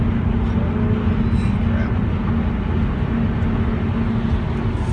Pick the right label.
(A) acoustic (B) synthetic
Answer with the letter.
A